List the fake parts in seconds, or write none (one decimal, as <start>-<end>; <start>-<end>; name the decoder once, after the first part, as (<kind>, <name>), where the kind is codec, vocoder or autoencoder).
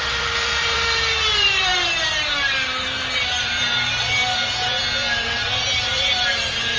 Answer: 0.0-1.7 (vocoder, BigVGAN v2); 2.5-4.2; 5.8-6.8